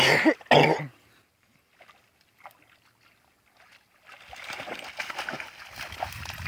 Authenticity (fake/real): real